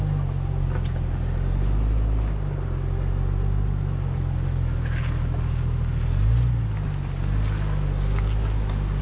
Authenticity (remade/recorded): recorded